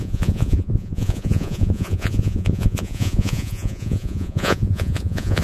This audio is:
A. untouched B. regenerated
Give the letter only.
B